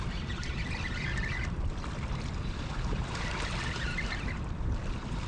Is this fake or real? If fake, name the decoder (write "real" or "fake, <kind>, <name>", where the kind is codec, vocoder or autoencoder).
fake, vocoder, BigVGAN v2